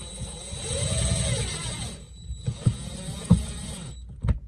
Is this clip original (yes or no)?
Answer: no